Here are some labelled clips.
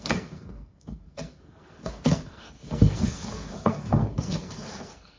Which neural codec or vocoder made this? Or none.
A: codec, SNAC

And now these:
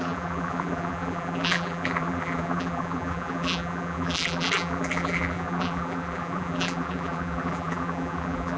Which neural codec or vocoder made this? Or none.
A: vocoder, BigVGAN v2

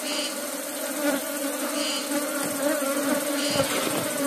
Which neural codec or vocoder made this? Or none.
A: none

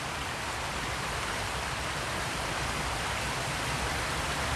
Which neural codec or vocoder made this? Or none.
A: none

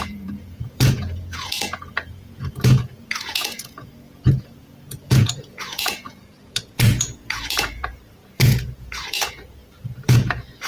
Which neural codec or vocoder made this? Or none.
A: vocoder, Vocos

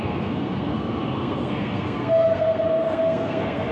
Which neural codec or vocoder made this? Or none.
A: codec, SNAC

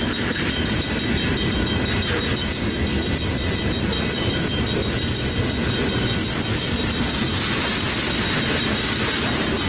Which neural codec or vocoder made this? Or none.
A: none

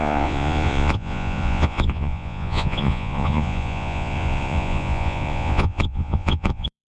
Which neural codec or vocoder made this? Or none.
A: vocoder, Vocos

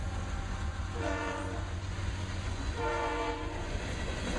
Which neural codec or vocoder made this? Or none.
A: vocoder, Vocos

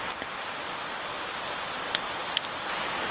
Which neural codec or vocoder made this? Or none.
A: none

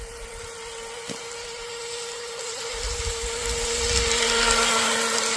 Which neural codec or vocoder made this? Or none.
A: none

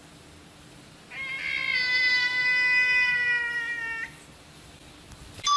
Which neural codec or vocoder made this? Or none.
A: none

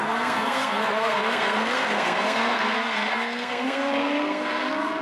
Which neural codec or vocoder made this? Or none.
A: codec, SNAC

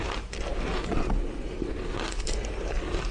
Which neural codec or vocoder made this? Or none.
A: none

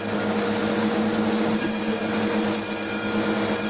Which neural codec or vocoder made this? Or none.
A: none